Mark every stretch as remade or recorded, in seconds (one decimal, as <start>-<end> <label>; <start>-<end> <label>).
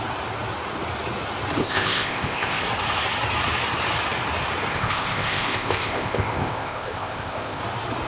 0.0-1.6 recorded; 1.6-2.6 remade; 2.6-4.7 recorded; 4.7-7.6 remade; 7.6-8.1 recorded